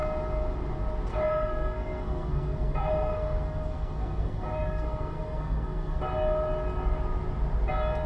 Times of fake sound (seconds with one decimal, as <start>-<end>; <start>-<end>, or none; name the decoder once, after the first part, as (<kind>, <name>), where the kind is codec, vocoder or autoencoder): 1.1-6.0 (codec, SNAC)

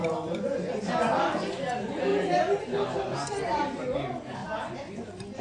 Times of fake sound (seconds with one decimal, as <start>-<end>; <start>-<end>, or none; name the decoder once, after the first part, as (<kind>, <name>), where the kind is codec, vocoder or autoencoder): none

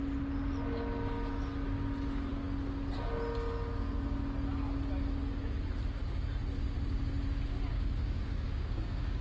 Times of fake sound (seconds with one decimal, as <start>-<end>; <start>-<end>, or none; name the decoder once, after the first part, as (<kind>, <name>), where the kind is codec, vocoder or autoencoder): 7.7-9.2 (codec, DAC)

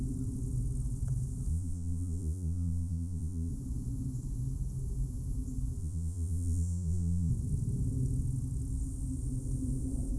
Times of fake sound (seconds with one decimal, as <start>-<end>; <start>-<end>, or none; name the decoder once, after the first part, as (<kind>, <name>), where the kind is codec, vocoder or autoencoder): 1.5-3.5 (vocoder, Vocos); 5.8-7.3

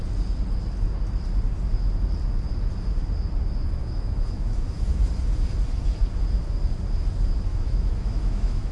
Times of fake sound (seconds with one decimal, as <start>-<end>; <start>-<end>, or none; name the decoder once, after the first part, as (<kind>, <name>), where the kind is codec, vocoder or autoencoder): 3.8-5.1 (autoencoder, DAC-VAE); 7.5-8.7